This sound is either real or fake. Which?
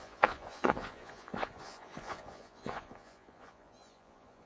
fake